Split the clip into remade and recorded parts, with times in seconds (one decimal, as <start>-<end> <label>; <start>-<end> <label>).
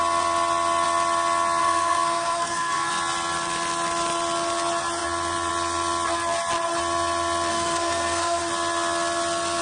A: 0.0-1.6 recorded; 1.6-2.9 remade; 2.9-7.5 recorded; 7.5-8.4 remade; 8.4-9.6 recorded